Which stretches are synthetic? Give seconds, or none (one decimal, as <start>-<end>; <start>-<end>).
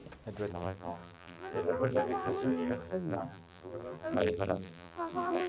0.5-5.5